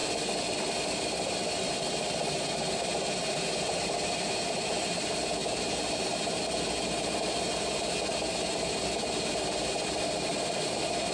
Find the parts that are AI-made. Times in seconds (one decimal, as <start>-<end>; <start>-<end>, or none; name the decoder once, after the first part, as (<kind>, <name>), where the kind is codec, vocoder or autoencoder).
0.8-5.4 (vocoder, BigVGAN v2); 9.3-11.1